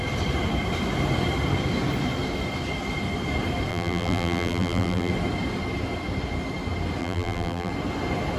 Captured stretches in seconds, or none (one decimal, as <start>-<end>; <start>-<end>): 0.0-3.7; 5.1-7.0; 7.7-8.4